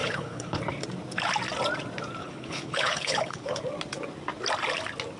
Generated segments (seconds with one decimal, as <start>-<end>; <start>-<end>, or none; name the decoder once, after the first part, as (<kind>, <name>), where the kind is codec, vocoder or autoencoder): 0.0-0.6 (codec, HILCodec); 2.2-3.6